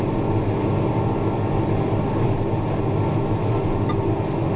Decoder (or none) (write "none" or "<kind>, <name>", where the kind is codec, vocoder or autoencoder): none